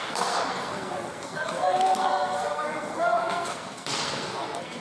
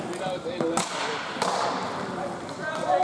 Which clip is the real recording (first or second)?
second